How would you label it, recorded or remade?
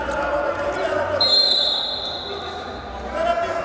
recorded